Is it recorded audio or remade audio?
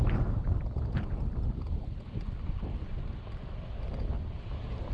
recorded